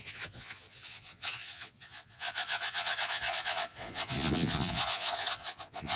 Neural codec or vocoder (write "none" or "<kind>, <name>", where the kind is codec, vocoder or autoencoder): vocoder, Vocos